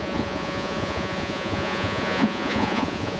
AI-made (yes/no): yes